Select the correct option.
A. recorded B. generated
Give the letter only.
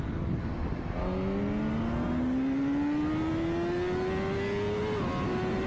A